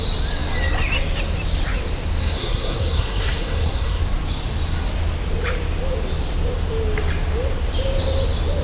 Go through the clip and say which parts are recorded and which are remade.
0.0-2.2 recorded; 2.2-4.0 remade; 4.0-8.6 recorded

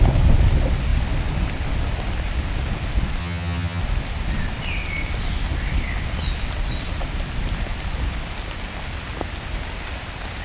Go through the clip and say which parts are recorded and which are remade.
0.0-3.2 recorded; 3.2-3.8 remade; 3.8-10.4 recorded

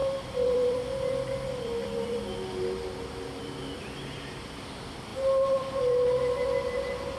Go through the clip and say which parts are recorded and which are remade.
0.0-2.2 remade; 2.2-5.1 recorded; 5.1-6.1 remade; 6.1-7.2 recorded

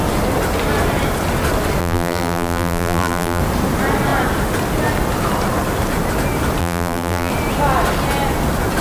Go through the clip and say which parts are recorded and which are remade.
0.0-1.8 recorded; 1.8-3.4 remade; 3.4-6.6 recorded; 6.6-7.3 remade; 7.3-8.8 recorded

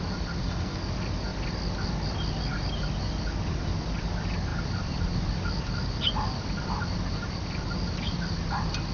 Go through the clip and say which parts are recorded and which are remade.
0.0-0.4 recorded; 0.4-0.9 remade; 0.9-8.9 recorded